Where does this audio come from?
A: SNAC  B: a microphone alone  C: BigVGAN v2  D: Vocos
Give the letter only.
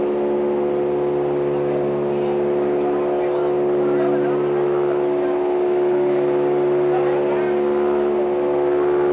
B